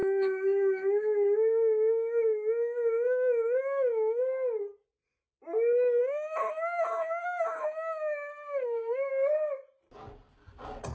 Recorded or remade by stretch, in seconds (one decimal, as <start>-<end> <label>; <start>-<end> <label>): 0.0-4.2 remade; 4.2-6.0 recorded; 6.0-9.1 remade; 9.1-10.9 recorded